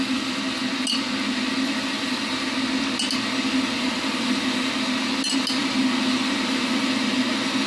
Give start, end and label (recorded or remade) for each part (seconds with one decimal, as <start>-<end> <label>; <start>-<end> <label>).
0.0-7.7 recorded

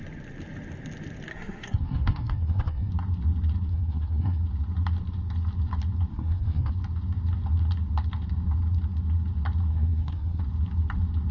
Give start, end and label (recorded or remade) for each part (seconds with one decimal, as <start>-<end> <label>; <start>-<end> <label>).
0.0-1.3 recorded; 1.3-2.9 remade; 2.9-3.7 recorded; 3.7-4.4 remade; 4.4-6.1 recorded; 6.1-6.7 remade; 6.7-9.7 recorded; 9.7-10.4 remade; 10.4-11.3 recorded

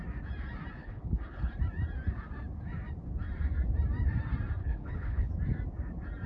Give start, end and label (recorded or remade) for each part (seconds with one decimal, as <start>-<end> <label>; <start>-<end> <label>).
0.0-0.8 recorded; 0.8-1.5 remade; 1.5-4.6 recorded; 4.6-5.3 remade; 5.3-6.3 recorded

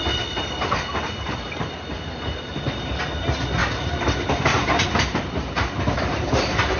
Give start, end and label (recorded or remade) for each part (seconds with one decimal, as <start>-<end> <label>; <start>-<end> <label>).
0.0-3.6 recorded; 3.6-5.7 remade; 5.7-6.8 recorded

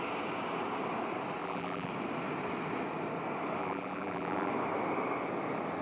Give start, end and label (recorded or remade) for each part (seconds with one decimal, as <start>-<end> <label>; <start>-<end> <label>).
0.0-1.4 recorded; 1.4-1.9 remade; 1.9-3.6 recorded; 3.6-4.5 remade; 4.5-5.8 recorded

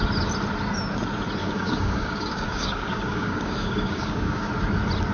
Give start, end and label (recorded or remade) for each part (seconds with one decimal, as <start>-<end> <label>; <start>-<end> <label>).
0.0-1.4 recorded; 1.4-4.5 remade; 4.5-5.1 recorded